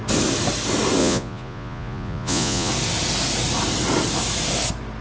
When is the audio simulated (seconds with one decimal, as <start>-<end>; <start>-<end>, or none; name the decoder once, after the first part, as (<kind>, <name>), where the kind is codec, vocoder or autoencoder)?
1.0-2.7 (vocoder, Vocos)